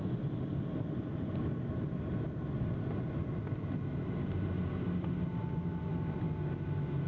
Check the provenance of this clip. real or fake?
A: real